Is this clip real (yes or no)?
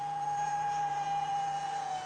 no